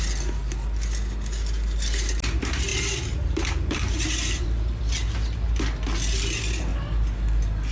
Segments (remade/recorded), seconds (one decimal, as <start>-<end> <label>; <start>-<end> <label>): 0.0-2.7 recorded; 2.7-4.8 remade; 4.8-7.7 recorded